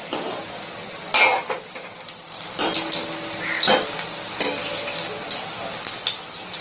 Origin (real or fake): real